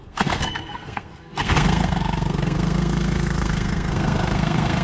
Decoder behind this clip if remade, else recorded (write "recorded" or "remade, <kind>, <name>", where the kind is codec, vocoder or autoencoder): remade, codec, SNAC